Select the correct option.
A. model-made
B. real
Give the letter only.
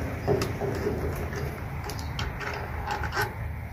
B